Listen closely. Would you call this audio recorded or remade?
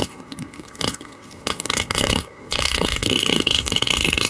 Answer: remade